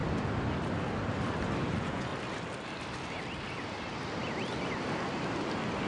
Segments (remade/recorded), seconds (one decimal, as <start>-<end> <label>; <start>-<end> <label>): 0.0-1.7 recorded; 1.7-2.1 remade; 2.1-5.9 recorded

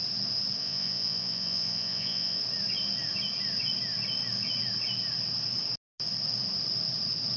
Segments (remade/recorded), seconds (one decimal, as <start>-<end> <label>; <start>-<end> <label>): 0.0-0.6 recorded; 0.6-2.4 remade; 2.4-7.4 recorded